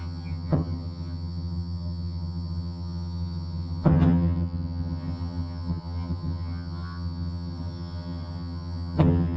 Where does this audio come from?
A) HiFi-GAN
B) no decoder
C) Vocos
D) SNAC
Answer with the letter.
A